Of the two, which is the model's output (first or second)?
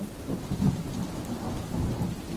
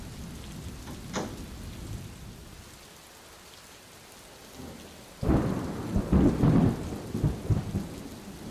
first